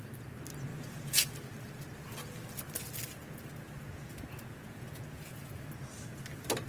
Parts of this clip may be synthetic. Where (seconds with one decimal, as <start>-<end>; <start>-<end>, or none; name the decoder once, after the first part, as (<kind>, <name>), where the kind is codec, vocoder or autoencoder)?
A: 0.7-1.3 (vocoder, Vocos); 3.2-5.7